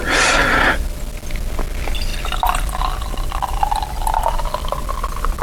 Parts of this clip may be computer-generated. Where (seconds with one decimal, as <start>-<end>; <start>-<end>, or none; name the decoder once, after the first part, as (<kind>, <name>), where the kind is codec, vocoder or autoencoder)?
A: none